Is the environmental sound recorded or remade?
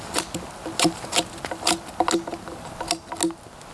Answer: recorded